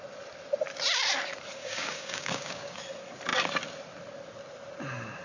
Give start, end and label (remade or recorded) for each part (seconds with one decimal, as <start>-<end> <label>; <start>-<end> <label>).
0.0-1.6 recorded; 1.6-2.8 remade; 2.8-5.2 recorded